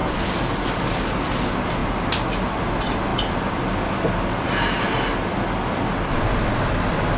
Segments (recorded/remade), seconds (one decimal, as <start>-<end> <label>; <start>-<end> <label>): 0.0-0.8 remade; 0.8-7.2 recorded